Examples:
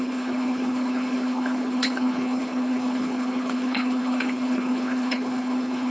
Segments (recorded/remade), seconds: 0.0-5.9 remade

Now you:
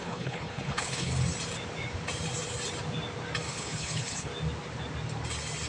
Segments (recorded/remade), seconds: 0.0-1.1 remade; 1.1-3.5 recorded; 3.5-4.3 remade; 4.3-5.7 recorded

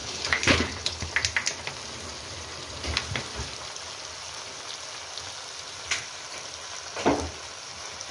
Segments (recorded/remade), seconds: 0.0-1.1 remade; 1.1-8.1 recorded

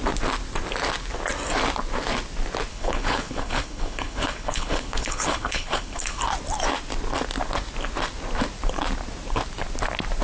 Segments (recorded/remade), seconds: 0.0-2.7 recorded; 2.7-6.2 remade; 6.2-10.2 recorded

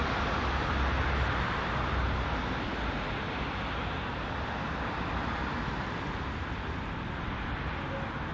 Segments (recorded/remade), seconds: 0.0-8.3 recorded